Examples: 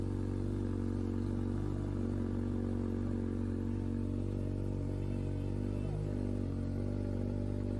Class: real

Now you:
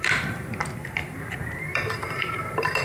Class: fake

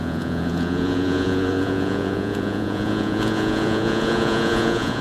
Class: fake